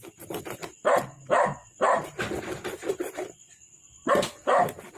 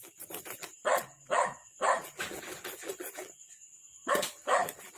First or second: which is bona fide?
first